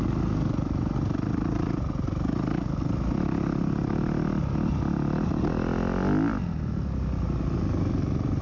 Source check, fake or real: real